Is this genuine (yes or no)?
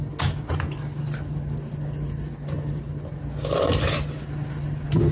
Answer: yes